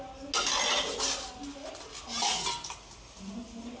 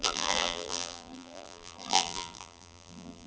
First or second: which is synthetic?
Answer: second